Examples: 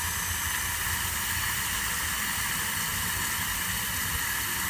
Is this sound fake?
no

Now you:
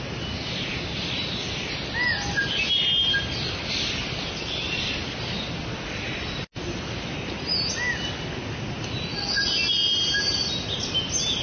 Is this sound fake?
no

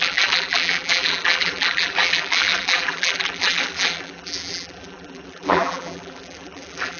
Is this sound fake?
yes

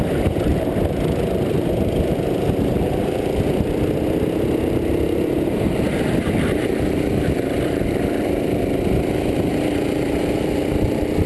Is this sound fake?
yes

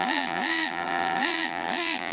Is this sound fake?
yes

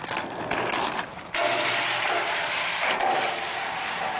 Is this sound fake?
yes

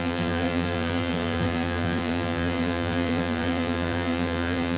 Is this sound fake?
yes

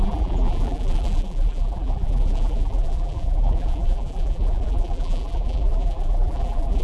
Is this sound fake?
yes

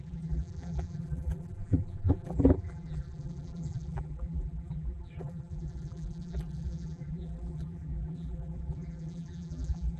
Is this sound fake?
yes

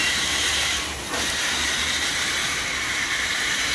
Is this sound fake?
yes